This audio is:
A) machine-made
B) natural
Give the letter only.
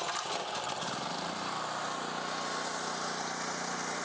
B